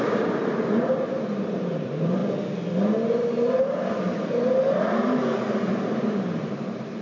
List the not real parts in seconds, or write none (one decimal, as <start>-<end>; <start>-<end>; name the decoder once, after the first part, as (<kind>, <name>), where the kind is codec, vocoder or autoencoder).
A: 0.0-2.2 (vocoder, BigVGAN v2); 3.9-7.0